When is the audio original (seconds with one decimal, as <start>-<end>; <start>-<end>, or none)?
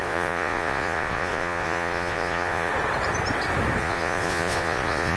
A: 2.7-3.8